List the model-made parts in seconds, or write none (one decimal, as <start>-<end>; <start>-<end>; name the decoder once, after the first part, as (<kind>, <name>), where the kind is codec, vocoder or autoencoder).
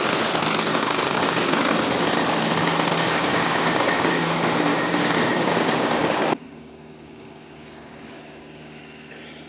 0.7-1.7 (codec, DAC); 3.3-4.1; 4.7-8.8